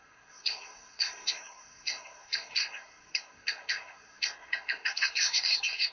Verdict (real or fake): fake